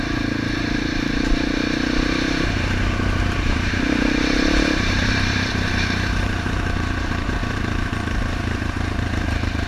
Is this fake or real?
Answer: fake